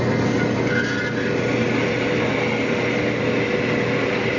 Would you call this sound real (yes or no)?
yes